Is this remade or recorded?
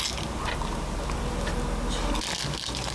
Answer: recorded